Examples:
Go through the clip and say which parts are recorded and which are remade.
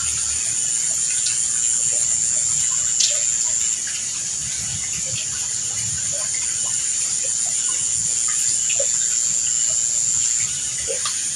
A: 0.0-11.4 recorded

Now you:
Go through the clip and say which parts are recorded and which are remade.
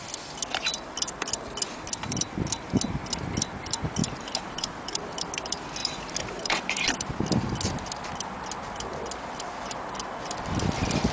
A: 0.0-4.0 recorded; 4.0-5.2 remade; 5.2-5.8 recorded; 5.8-6.8 remade; 6.8-11.1 recorded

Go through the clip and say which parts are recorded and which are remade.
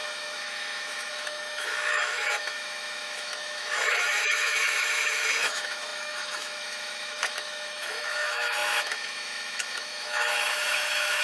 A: 0.0-11.2 remade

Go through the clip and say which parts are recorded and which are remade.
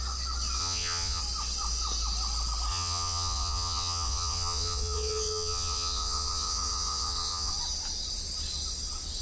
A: 0.0-0.6 recorded; 0.6-1.2 remade; 1.2-2.7 recorded; 2.7-7.5 remade; 7.5-9.2 recorded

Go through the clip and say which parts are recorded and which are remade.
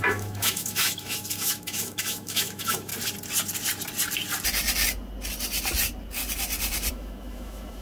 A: 0.0-2.9 remade; 2.9-6.9 recorded; 6.9-7.8 remade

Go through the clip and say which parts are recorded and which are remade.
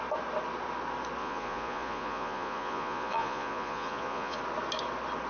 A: 0.0-1.2 recorded; 1.2-4.4 remade; 4.4-5.3 recorded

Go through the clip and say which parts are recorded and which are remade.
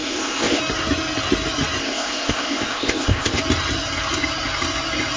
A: 0.0-0.6 remade; 0.6-1.8 recorded; 1.8-3.4 remade; 3.4-5.2 recorded